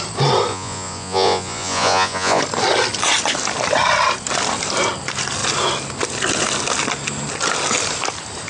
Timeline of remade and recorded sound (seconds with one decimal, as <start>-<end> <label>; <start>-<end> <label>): 0.0-0.5 recorded; 0.5-2.4 remade; 2.4-8.5 recorded